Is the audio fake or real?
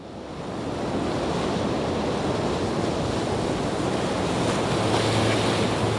real